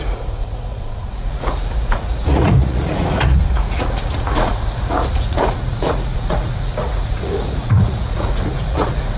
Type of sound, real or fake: fake